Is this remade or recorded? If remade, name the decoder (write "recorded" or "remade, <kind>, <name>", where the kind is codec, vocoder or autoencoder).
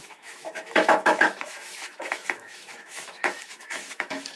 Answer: remade, autoencoder, DAC-VAE